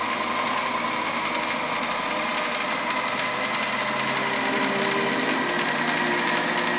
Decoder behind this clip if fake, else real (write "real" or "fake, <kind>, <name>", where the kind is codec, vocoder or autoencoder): real